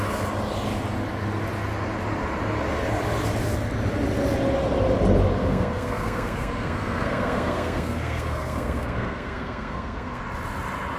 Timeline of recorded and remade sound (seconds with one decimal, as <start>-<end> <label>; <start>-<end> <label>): 0.0-5.4 recorded; 5.4-10.2 remade; 10.2-11.0 recorded